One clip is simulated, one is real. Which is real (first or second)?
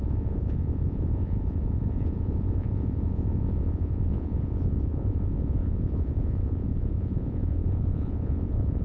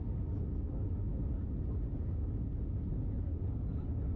second